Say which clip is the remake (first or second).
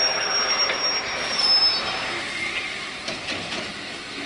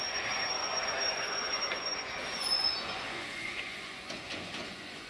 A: second